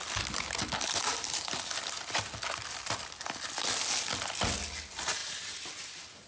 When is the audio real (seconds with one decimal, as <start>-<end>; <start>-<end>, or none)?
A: 0.0-6.3